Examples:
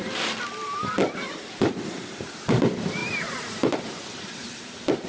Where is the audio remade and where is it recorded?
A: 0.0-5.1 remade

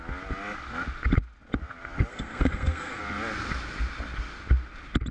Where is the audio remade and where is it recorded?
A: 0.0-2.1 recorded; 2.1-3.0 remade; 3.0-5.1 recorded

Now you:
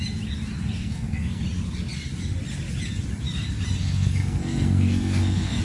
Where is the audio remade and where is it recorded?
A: 0.0-0.8 recorded; 0.8-1.4 remade; 1.4-3.8 recorded; 3.8-5.6 remade